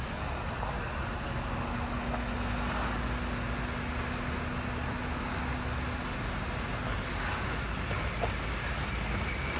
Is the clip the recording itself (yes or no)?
yes